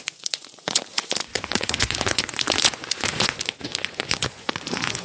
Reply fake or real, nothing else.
fake